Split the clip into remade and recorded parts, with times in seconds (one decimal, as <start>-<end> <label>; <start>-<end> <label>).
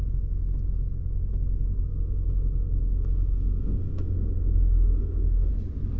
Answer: 0.0-1.9 recorded; 1.9-5.5 remade; 5.5-6.0 recorded